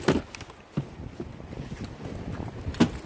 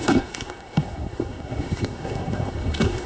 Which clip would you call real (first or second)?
first